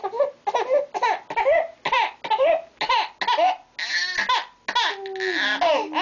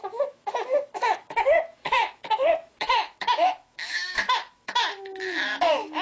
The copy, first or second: second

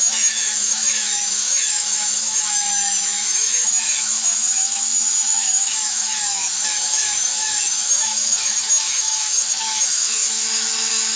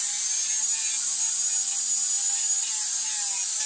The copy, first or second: first